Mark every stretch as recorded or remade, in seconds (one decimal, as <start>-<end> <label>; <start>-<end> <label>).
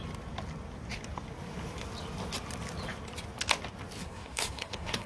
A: 0.0-4.0 recorded; 4.0-5.1 remade